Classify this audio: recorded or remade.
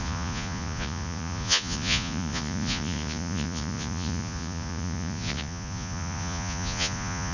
remade